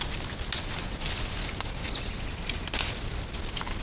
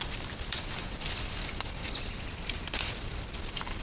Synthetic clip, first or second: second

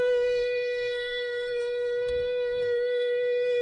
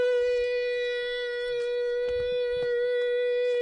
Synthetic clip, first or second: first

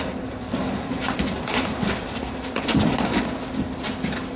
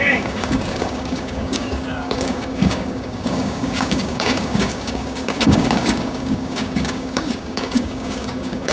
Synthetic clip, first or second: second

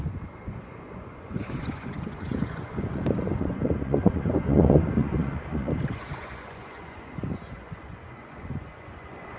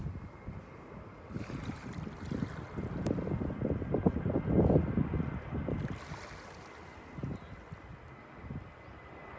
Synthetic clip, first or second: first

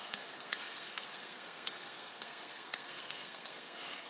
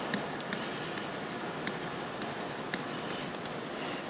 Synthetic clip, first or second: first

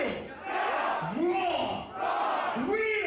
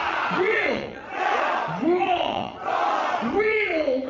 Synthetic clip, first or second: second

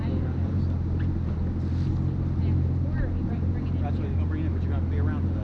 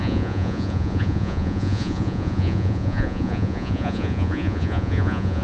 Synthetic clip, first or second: second